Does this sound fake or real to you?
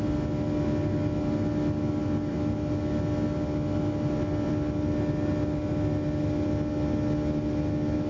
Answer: fake